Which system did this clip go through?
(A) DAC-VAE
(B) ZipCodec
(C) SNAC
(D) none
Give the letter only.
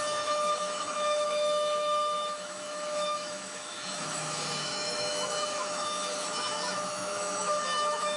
A